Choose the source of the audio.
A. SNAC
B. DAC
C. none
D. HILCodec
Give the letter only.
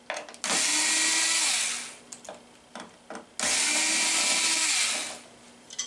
C